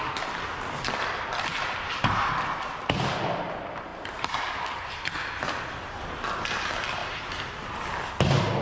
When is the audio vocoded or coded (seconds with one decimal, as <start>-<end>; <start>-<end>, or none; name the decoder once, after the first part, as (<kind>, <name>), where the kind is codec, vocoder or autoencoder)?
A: none